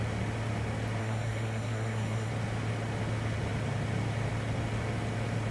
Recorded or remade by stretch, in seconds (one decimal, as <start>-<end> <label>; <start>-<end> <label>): 0.0-1.0 recorded; 1.0-2.3 remade; 2.3-5.5 recorded